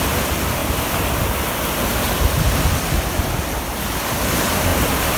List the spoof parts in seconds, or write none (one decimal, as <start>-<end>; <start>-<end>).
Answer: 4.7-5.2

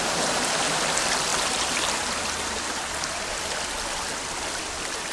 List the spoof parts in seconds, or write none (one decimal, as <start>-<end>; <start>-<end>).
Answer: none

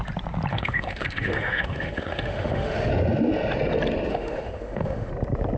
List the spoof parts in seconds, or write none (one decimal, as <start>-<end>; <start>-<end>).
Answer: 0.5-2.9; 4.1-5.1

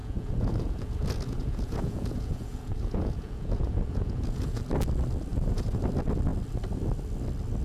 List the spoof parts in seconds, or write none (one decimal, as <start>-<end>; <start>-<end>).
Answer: 0.0-4.6; 5.3-5.8

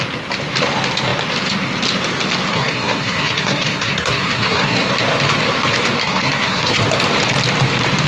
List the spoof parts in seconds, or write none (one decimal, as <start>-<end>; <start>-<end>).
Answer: 2.5-4.9; 6.0-6.8

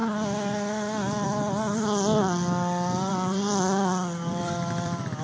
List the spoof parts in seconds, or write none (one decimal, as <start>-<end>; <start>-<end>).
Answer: 3.1-5.2